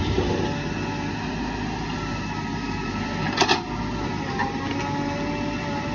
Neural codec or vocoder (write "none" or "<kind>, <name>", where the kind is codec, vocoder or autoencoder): none